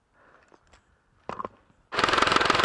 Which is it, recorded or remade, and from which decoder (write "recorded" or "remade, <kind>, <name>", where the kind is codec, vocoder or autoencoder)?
recorded